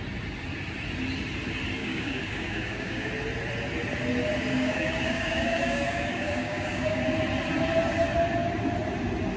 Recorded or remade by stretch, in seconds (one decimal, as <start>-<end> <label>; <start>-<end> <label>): 0.0-1.8 recorded; 1.8-3.1 remade; 3.1-4.5 recorded; 4.5-7.0 remade; 7.0-9.4 recorded